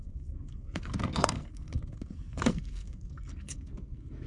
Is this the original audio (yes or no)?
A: no